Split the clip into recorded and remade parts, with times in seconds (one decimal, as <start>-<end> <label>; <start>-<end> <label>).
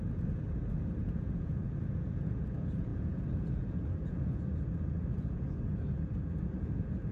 0.0-7.1 remade